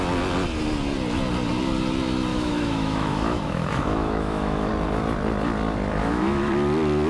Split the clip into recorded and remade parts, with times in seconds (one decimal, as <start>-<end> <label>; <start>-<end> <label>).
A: 0.0-2.3 recorded; 2.3-4.7 remade; 4.7-6.0 recorded; 6.0-6.5 remade; 6.5-7.1 recorded